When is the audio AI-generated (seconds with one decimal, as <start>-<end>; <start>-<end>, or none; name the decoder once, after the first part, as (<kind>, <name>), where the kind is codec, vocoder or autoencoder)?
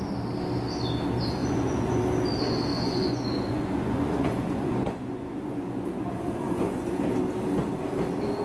1.4-2.0 (vocoder, Vocos); 2.7-7.0